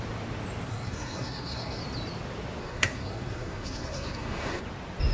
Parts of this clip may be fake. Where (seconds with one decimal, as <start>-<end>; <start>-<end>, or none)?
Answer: 0.7-1.8; 2.6-4.6

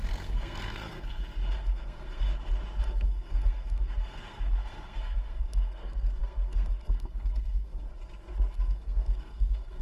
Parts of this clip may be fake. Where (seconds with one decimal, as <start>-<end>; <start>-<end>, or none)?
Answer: 0.0-2.3; 2.8-7.9; 8.5-9.8

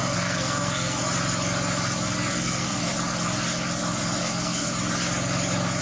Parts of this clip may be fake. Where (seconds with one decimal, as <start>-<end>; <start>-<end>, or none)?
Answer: 0.0-1.0; 2.3-2.8; 4.2-4.7

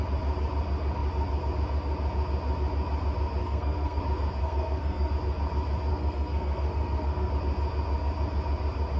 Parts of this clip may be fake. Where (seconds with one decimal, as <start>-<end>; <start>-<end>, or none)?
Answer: 3.4-4.0; 4.4-5.1; 5.9-7.3

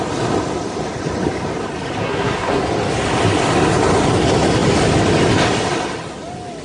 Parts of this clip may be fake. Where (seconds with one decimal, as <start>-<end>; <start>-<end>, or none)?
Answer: 2.0-2.6

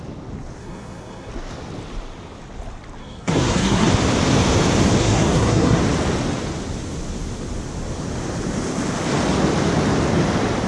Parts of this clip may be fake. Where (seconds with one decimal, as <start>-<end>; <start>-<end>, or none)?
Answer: 0.6-1.3; 3.0-3.9; 5.0-5.8

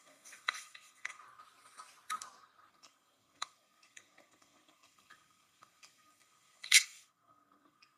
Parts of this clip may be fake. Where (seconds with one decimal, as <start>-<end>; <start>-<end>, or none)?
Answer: 0.0-1.2; 2.7-8.0